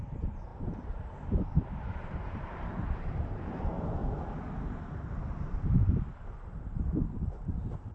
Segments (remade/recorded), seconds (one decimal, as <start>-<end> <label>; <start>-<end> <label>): 0.0-4.0 remade; 4.0-4.6 recorded; 4.6-7.9 remade